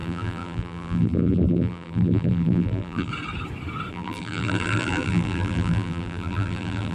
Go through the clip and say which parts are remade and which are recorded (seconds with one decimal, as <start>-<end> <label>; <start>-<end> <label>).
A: 0.0-3.1 remade; 3.1-3.9 recorded; 3.9-6.9 remade

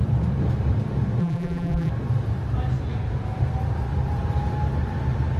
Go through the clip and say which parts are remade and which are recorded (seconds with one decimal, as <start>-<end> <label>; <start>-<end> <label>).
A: 0.0-1.2 recorded; 1.2-1.9 remade; 1.9-5.4 recorded

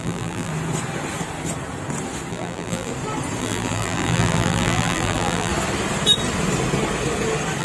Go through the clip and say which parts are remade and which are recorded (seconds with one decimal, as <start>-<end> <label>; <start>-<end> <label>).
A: 0.0-0.5 remade; 0.5-2.3 recorded; 2.3-2.9 remade; 2.9-3.4 recorded; 3.4-5.5 remade; 5.5-7.6 recorded

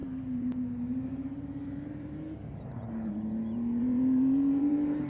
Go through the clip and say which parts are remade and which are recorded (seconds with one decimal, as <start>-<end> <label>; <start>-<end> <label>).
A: 0.0-5.1 remade